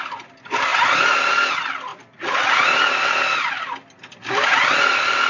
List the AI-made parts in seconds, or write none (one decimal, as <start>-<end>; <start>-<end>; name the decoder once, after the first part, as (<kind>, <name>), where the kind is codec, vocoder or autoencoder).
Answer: none